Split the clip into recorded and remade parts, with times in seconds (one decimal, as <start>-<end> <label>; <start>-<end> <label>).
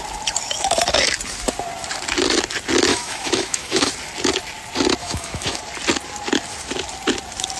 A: 0.0-2.9 recorded; 2.9-3.9 remade; 3.9-5.0 recorded; 5.0-5.6 remade; 5.6-7.6 recorded